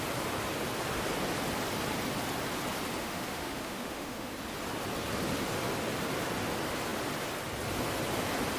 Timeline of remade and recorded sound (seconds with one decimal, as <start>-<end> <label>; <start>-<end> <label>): 0.0-3.0 recorded; 3.0-4.3 remade; 4.3-8.6 recorded